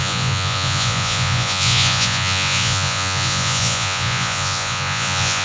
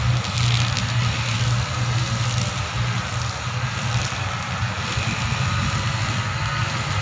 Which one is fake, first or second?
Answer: first